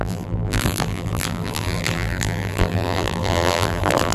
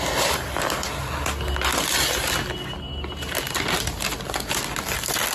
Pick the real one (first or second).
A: second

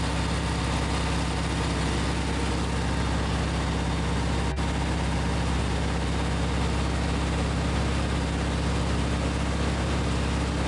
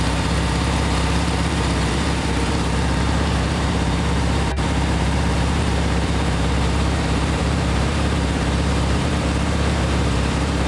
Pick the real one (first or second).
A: first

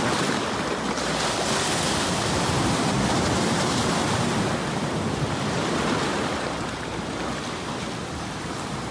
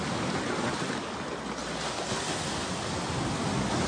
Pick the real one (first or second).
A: second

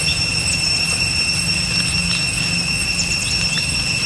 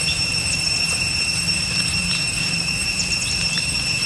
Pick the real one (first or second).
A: first